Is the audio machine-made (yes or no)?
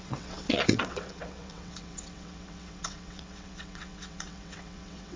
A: yes